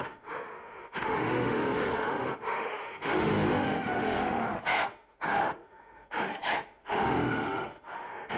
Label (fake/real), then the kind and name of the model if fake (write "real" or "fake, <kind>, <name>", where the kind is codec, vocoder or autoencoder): fake, autoencoder, DAC-VAE